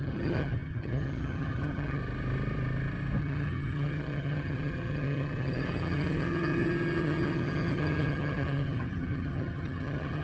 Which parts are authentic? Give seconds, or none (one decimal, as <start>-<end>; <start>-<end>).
2.0-3.2